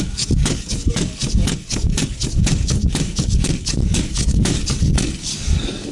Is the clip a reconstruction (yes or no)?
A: yes